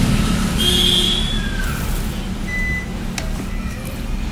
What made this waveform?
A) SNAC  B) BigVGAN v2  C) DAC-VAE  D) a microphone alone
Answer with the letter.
D